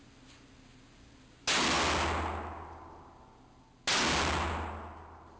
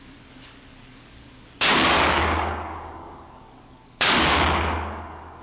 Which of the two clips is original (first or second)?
first